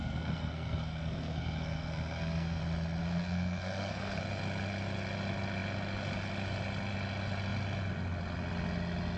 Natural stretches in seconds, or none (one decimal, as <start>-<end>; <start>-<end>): 2.6-3.0; 4.2-9.2